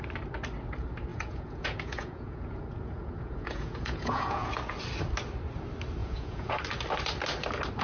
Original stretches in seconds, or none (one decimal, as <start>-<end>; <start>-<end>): 0.0-1.1; 4.5-6.0; 6.6-7.8

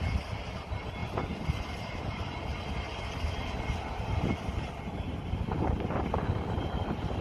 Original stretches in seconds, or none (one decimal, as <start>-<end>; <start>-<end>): 0.0-7.2

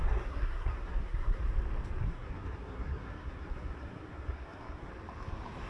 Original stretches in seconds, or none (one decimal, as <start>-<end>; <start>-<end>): 1.4-2.0; 4.9-5.7

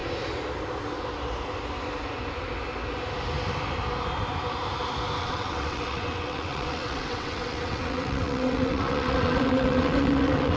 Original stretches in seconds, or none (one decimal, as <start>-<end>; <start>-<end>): 0.0-5.2